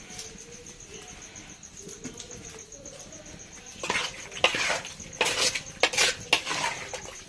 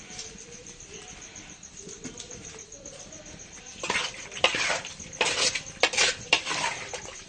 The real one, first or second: first